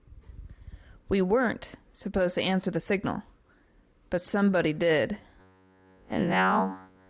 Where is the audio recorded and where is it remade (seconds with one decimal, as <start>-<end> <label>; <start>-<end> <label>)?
0.0-5.4 recorded; 5.4-7.1 remade